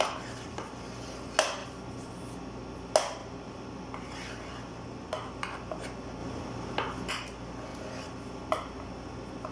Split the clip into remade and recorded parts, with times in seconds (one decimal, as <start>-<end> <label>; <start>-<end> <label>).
0.0-1.6 recorded; 1.6-2.1 remade; 2.1-9.5 recorded